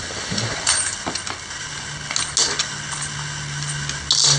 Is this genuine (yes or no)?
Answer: yes